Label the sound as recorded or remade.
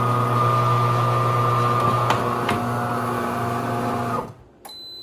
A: recorded